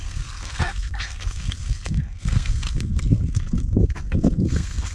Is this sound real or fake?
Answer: fake